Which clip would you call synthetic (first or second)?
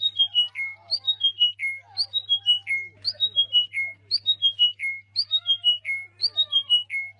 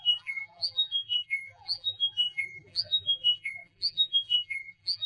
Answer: second